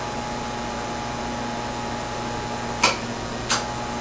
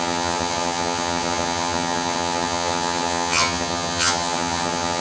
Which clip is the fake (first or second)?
second